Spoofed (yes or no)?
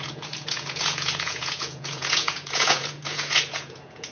yes